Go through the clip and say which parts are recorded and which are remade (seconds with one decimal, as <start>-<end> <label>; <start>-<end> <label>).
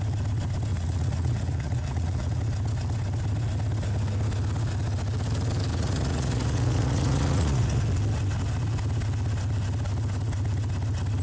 0.0-0.7 recorded; 0.7-2.4 remade; 2.4-5.7 recorded; 5.7-7.8 remade; 7.8-11.2 recorded